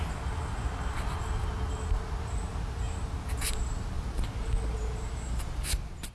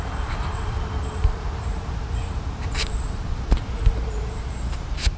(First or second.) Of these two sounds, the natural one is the first